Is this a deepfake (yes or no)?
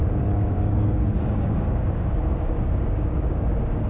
yes